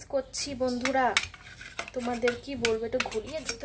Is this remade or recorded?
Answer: recorded